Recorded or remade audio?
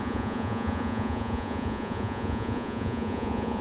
remade